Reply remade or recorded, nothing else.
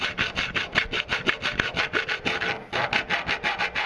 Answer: recorded